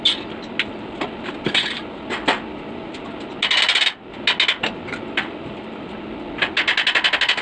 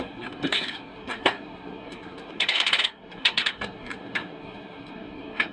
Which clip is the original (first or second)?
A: first